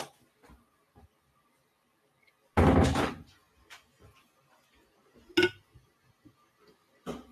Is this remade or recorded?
recorded